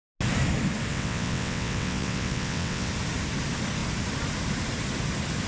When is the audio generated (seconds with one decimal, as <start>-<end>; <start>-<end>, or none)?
0.9-2.9